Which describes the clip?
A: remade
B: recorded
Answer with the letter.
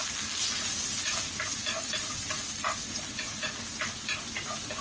B